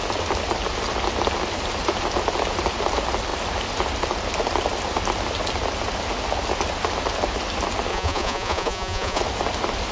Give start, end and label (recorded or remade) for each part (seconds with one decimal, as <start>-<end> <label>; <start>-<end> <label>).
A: 0.0-7.9 recorded; 7.9-9.2 remade; 9.2-9.9 recorded